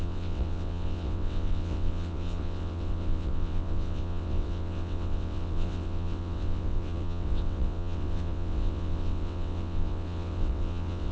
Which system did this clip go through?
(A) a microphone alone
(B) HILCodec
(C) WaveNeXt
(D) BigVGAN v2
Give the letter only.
C